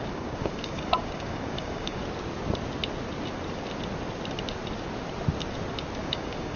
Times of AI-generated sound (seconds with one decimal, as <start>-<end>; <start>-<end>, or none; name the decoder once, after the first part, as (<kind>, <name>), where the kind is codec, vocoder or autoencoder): 0.0-2.0 (codec, DAC); 6.0-6.6